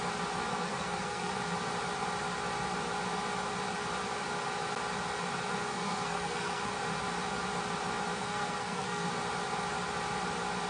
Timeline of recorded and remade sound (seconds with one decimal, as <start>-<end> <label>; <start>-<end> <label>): 0.0-0.5 recorded; 0.5-1.3 remade; 1.3-5.7 recorded; 5.7-6.7 remade; 6.7-8.2 recorded; 8.2-9.1 remade; 9.1-10.7 recorded

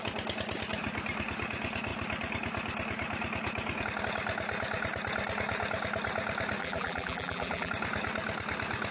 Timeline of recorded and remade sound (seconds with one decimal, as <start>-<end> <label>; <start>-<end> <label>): 0.0-6.6 recorded; 6.6-7.7 remade; 7.7-8.9 recorded